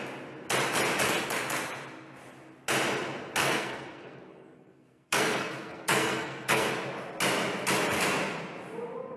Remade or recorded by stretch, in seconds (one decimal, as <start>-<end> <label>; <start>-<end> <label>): 0.0-3.4 recorded; 3.4-6.7 remade; 6.7-9.2 recorded